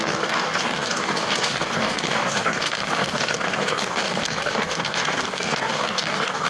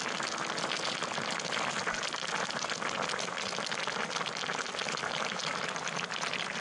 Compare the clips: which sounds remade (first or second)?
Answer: first